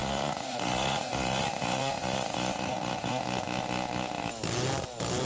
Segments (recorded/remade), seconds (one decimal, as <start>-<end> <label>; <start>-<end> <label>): 0.0-3.2 remade; 3.2-5.3 recorded